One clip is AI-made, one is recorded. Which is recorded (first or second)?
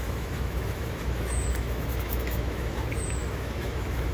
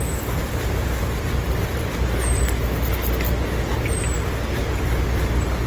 second